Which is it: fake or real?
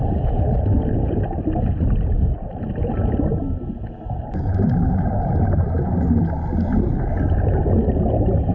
real